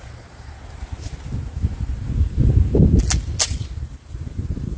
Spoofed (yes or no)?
no